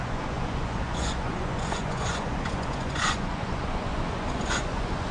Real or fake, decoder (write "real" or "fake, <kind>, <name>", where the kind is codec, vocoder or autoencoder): fake, vocoder, Vocos